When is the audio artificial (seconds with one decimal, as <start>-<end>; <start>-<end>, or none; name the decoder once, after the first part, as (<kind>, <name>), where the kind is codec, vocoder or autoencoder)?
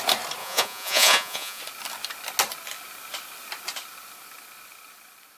0.4-1.6 (vocoder, Vocos)